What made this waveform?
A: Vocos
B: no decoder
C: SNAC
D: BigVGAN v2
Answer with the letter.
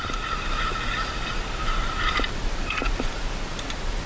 D